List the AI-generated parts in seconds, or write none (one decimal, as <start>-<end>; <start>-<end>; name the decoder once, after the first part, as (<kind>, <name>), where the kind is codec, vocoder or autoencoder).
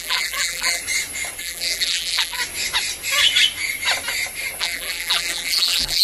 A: 0.0-0.8 (vocoder, BigVGAN v2); 1.4-2.4; 4.6-6.0